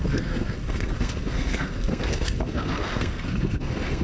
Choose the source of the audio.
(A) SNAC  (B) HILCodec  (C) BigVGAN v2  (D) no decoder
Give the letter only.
A